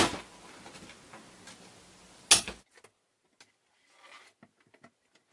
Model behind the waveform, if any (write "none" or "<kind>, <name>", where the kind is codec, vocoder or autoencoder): none